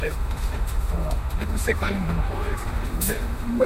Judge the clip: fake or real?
fake